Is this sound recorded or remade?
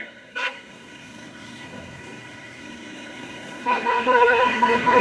remade